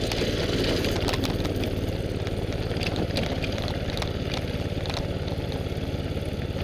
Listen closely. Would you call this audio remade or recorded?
recorded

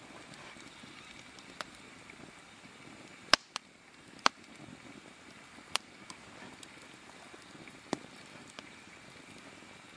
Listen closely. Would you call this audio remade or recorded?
recorded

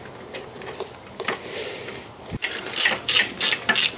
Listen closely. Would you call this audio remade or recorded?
recorded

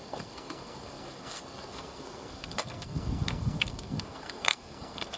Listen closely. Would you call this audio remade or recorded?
remade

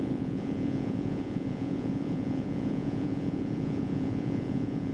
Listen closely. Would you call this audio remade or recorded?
remade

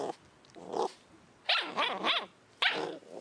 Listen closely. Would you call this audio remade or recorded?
recorded